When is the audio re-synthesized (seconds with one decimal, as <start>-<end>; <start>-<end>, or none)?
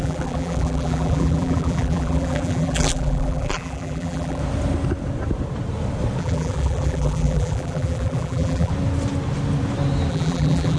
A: 0.0-4.4; 6.2-8.7; 10.1-10.8